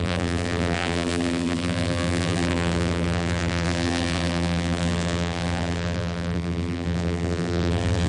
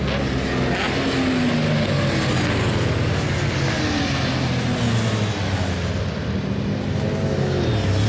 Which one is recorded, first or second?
second